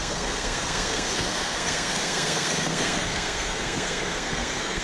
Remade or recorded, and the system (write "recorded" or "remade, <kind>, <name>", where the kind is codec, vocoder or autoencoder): remade, codec, SNAC